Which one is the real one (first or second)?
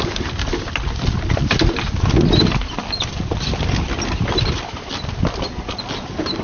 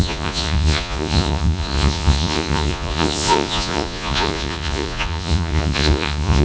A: first